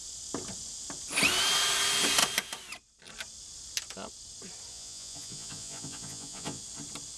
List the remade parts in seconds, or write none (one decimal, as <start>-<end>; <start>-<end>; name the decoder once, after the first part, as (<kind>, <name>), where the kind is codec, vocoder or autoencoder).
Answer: 4.7-6.6 (vocoder, Vocos)